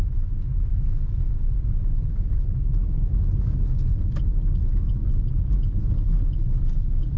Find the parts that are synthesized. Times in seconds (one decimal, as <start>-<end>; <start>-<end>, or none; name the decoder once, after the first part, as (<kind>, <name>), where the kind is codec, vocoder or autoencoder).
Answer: none